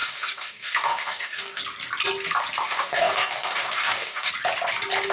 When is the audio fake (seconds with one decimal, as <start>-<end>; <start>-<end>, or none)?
0.0-1.6; 2.6-4.3